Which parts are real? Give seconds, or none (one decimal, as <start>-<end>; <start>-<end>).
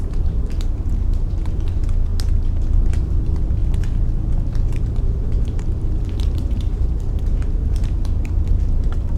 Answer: 2.1-2.8; 3.6-5.0